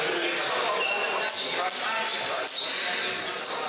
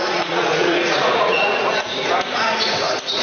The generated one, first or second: second